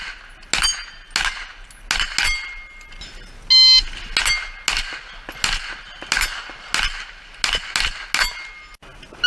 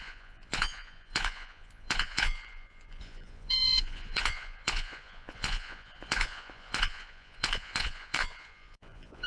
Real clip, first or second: first